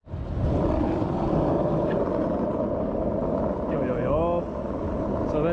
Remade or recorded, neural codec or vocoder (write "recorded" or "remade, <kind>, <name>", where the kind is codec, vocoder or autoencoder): recorded